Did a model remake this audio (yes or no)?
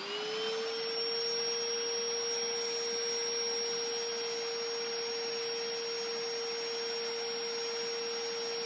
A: no